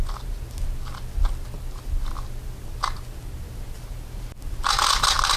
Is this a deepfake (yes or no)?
no